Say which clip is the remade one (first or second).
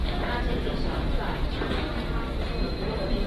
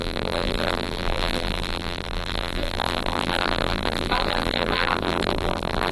second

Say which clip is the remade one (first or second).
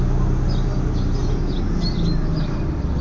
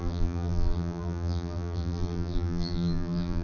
second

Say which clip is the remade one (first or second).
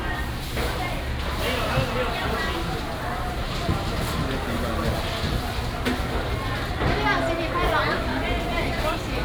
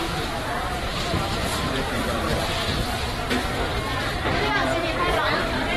second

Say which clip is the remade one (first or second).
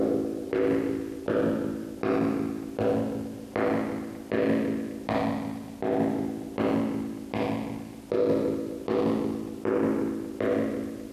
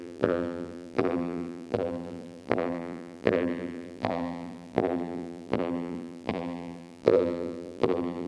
second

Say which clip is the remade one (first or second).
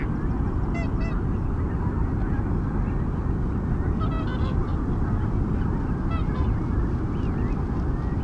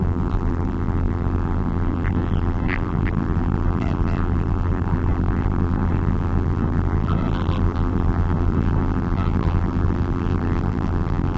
second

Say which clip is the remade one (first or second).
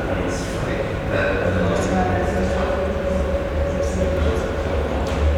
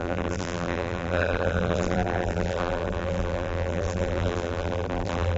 second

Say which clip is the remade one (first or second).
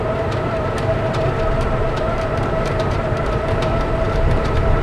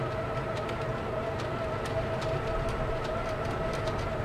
first